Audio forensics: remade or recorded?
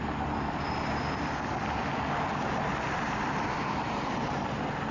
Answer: recorded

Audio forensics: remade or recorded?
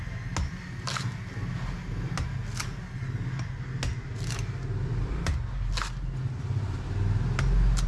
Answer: recorded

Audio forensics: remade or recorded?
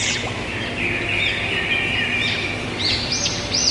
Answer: recorded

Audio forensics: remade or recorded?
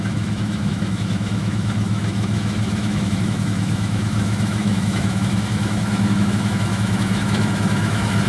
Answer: remade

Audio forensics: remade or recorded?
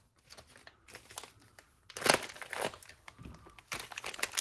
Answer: recorded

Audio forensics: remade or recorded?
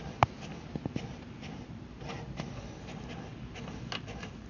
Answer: recorded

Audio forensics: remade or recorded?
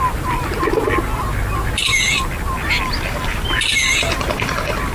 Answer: recorded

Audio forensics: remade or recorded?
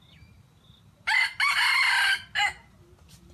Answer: recorded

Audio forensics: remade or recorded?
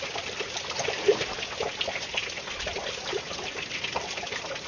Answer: recorded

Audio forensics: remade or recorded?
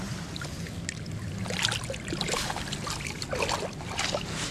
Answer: recorded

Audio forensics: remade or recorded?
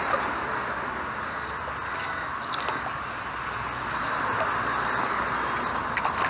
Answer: recorded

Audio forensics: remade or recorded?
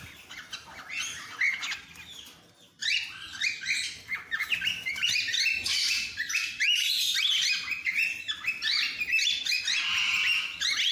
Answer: recorded